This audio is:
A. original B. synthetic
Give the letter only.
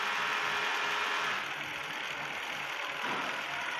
A